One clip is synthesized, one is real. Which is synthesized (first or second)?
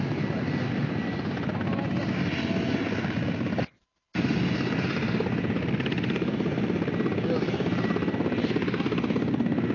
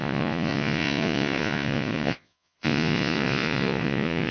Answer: second